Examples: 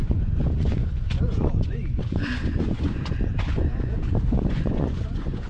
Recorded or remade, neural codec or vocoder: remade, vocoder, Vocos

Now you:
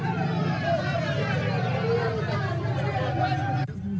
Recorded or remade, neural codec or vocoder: recorded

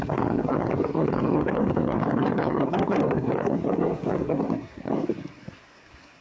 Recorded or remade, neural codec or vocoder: remade, codec, SNAC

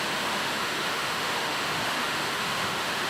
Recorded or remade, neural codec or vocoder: remade, autoencoder, DAC-VAE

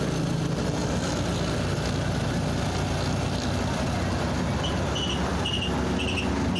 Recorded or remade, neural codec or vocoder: recorded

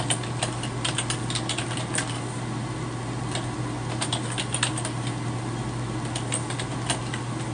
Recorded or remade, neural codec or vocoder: recorded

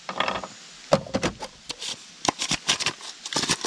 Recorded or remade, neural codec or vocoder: recorded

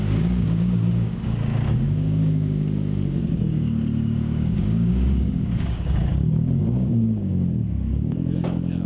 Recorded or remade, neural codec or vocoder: remade, codec, DAC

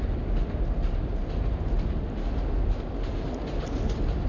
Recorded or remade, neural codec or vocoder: recorded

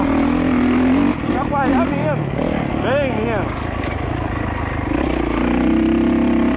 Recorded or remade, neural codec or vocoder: recorded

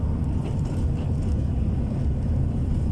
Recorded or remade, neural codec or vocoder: recorded